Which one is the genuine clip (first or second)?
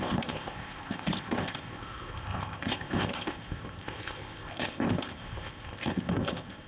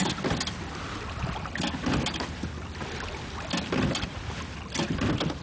second